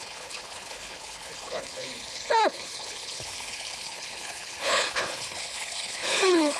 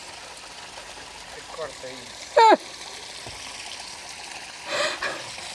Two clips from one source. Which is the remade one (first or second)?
first